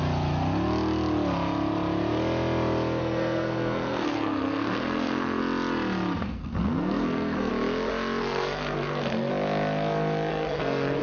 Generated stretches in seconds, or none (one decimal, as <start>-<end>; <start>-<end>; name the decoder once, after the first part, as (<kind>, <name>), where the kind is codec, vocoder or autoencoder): 3.0-5.4 (codec, SNAC); 6.2-7.5; 8.2-9.3; 10.3-11.0